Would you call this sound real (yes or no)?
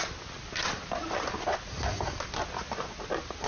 yes